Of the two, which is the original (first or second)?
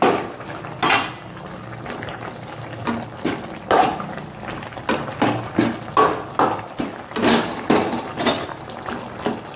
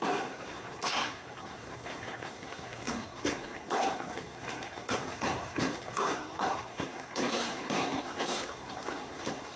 first